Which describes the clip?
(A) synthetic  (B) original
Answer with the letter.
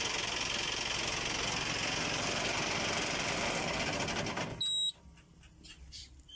B